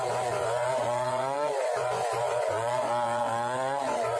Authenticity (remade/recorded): remade